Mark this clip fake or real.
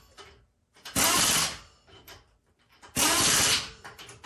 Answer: real